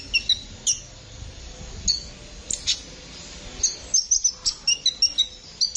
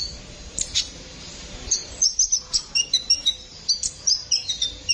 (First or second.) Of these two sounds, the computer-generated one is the second